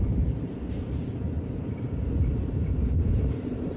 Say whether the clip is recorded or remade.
recorded